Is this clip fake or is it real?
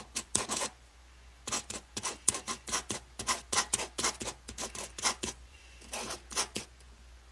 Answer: fake